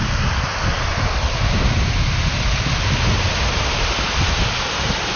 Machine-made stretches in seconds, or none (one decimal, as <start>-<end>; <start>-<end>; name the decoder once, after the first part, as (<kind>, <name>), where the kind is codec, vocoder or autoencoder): none